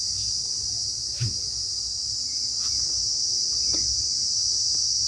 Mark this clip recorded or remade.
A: recorded